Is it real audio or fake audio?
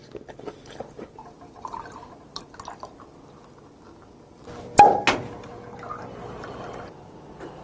real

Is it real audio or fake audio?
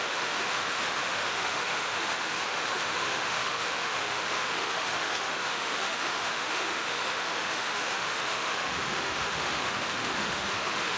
fake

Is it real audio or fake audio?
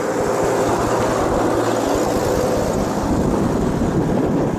real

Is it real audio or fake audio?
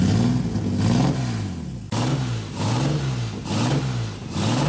real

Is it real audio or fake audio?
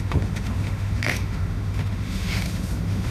fake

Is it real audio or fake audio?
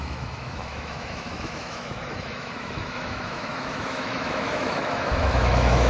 fake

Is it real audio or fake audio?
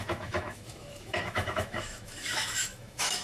fake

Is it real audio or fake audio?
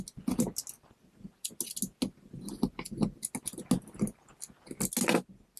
real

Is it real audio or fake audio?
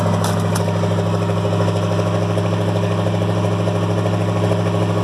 real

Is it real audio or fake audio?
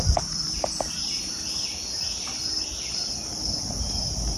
real